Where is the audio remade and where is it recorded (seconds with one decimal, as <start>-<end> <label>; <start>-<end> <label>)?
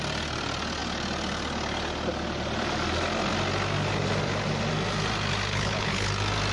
0.0-5.5 recorded; 5.5-6.1 remade; 6.1-6.5 recorded